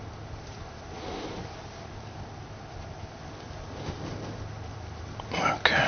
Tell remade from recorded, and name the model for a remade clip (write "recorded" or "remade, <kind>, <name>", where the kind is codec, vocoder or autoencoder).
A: recorded